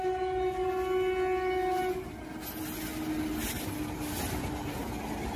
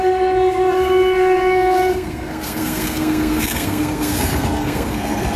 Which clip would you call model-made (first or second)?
second